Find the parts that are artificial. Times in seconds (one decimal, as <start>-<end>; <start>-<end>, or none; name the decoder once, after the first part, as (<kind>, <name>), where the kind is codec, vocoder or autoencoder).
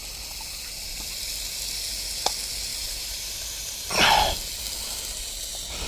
2.7-3.9 (vocoder, BigVGAN v2)